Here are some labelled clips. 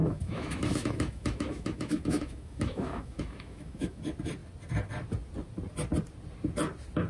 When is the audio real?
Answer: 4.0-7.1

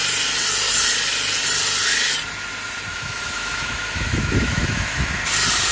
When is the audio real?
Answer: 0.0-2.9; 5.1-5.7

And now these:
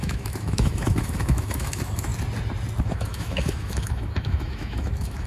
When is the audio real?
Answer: 2.1-2.8